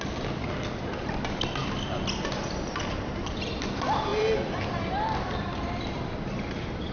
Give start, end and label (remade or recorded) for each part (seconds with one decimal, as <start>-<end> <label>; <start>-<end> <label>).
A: 0.0-4.1 recorded; 4.1-6.9 remade